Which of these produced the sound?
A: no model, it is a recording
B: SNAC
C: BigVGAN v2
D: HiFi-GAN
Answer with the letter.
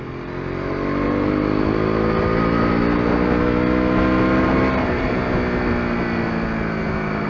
A